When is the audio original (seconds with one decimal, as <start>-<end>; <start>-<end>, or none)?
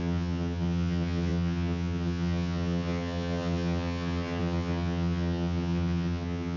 none